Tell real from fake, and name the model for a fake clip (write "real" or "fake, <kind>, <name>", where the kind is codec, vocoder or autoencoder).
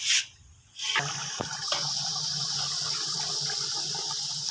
real